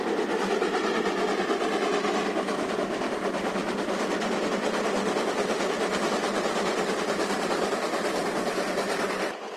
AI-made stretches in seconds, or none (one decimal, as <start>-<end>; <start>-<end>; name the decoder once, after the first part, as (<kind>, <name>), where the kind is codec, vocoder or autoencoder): none